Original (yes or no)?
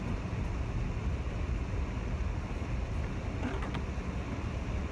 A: yes